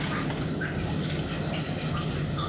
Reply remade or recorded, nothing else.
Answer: recorded